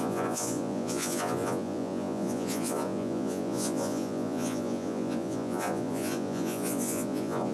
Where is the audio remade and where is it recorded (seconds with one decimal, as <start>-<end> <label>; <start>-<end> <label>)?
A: 0.0-7.5 remade